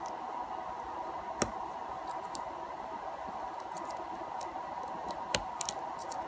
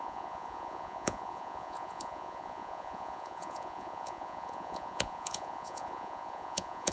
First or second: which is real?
first